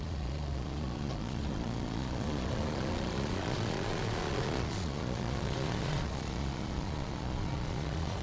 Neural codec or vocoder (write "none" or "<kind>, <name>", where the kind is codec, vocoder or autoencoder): vocoder, Vocos